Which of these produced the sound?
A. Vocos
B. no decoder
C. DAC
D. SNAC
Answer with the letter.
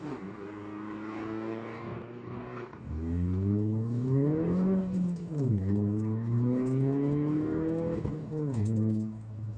C